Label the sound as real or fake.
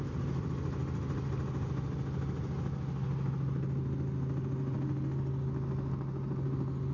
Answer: real